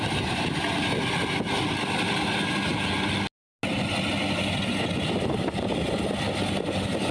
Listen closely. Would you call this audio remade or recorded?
recorded